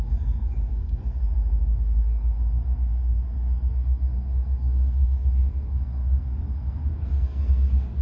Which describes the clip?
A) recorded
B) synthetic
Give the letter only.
B